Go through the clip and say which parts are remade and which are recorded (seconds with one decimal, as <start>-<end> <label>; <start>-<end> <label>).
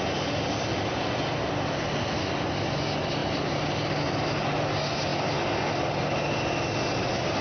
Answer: 0.0-7.4 recorded